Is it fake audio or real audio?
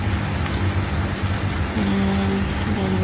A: real